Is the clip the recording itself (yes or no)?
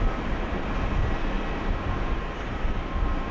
yes